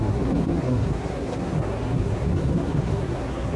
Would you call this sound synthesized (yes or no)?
yes